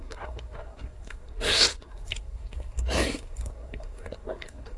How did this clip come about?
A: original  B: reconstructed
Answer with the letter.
B